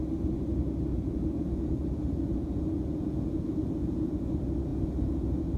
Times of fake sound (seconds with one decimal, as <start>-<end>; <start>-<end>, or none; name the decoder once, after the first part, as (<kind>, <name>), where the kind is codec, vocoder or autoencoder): 0.9-4.3 (vocoder, Vocos); 4.7-5.6